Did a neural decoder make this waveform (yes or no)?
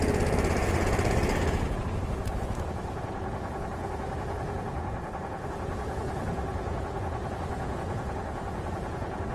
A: yes